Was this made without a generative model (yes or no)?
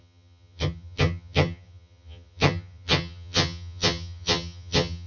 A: no